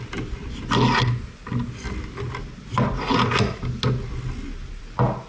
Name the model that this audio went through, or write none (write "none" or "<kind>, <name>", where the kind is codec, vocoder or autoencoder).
none